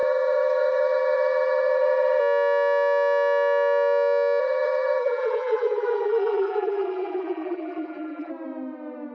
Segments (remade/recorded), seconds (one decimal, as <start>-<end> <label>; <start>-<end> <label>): 0.0-2.2 remade; 2.2-4.4 recorded; 4.4-8.3 remade; 8.3-9.1 recorded